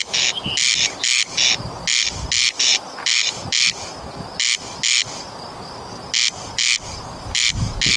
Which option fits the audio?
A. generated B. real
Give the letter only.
B